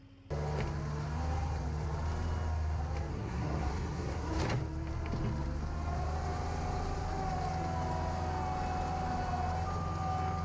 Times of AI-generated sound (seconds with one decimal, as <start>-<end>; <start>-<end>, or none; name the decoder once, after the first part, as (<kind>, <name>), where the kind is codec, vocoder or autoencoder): 3.1-4.3 (codec, SNAC)